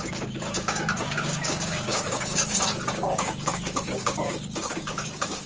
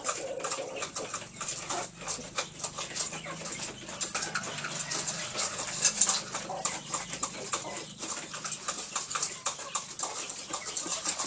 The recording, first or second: second